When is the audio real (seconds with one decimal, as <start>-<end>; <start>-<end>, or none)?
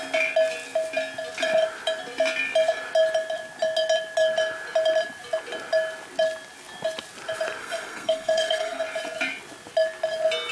0.0-7.6; 8.8-10.5